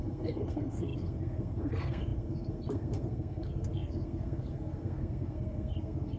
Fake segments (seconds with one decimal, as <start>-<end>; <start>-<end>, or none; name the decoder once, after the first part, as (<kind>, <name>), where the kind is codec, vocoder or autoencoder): 0.0-6.2 (codec, SNAC)